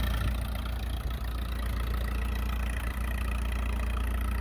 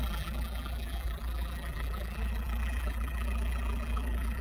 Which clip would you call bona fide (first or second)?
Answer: first